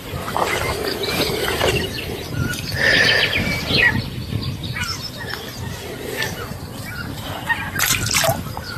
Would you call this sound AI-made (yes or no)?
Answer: no